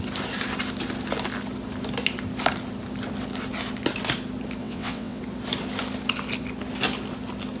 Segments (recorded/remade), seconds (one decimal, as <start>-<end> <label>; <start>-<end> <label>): 0.0-4.6 recorded; 4.6-5.2 remade; 5.2-7.6 recorded